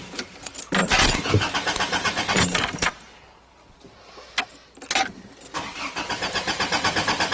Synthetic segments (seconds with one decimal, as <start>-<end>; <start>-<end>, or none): 0.0-0.8; 1.3-3.9; 6.1-7.3